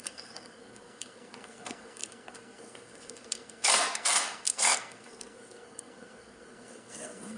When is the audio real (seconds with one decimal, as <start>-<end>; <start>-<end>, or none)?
none